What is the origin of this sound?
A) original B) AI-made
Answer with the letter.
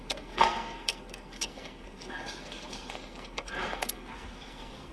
B